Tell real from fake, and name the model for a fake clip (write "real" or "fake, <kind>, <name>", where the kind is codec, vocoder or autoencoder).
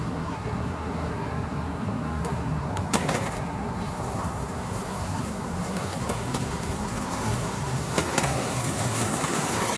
fake, codec, SNAC